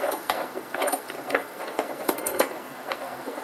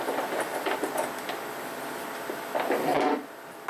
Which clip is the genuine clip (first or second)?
second